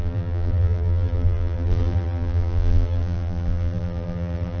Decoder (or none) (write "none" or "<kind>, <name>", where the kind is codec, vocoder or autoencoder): vocoder, BigVGAN v2